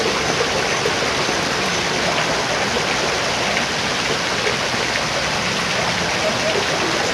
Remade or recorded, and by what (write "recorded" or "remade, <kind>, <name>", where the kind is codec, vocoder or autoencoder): recorded